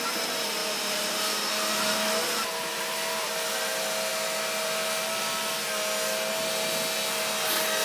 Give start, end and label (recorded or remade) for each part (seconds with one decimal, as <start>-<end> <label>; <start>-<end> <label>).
0.0-0.6 recorded; 0.6-1.5 remade; 1.5-7.8 recorded